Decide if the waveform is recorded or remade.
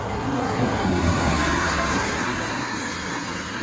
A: remade